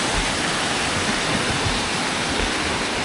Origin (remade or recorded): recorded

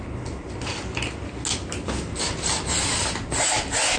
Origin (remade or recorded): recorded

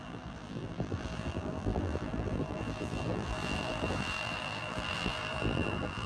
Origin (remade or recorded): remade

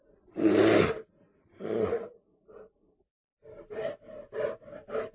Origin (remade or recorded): recorded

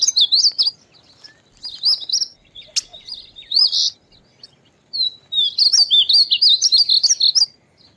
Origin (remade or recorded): recorded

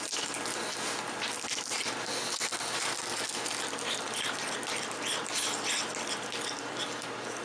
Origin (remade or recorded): recorded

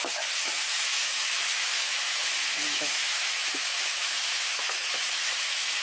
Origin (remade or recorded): remade